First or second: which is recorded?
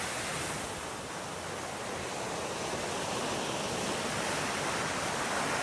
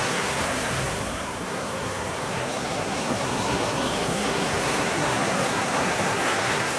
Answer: first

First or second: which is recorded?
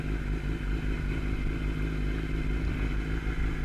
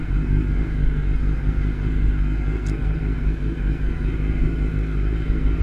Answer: first